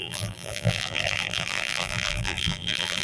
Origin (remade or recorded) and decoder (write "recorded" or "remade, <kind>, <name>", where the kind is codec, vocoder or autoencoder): remade, vocoder, BigVGAN v2